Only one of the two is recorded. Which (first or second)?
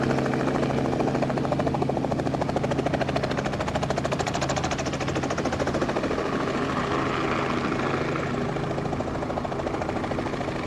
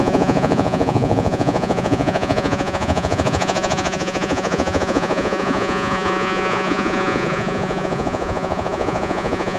first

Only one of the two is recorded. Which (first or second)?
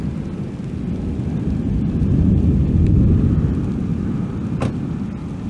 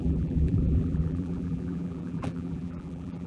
first